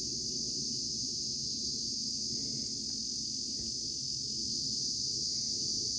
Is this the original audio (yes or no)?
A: yes